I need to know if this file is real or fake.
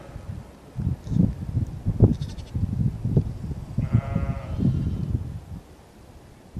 real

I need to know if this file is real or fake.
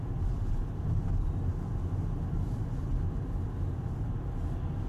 real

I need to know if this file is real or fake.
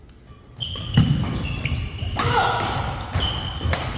real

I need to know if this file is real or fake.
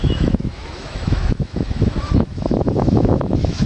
fake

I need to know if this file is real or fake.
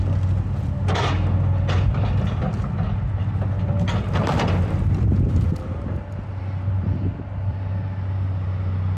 real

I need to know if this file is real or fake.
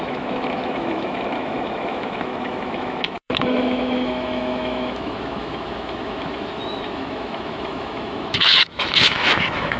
fake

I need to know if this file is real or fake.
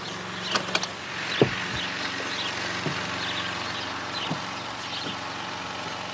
real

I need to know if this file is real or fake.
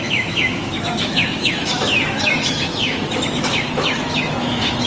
fake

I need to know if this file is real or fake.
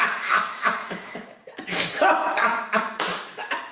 fake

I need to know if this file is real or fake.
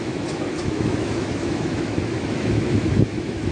fake